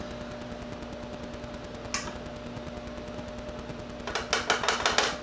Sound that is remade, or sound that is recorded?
recorded